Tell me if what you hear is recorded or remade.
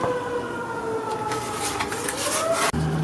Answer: recorded